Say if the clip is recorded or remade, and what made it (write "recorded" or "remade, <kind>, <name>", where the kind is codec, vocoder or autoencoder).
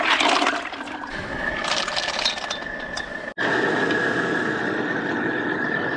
recorded